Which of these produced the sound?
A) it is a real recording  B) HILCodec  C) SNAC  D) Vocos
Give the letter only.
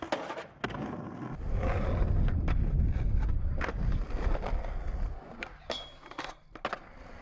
A